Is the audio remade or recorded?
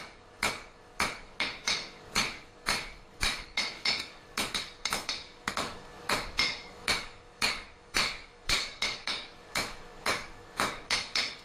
remade